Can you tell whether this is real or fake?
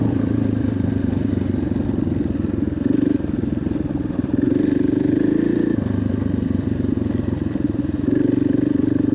fake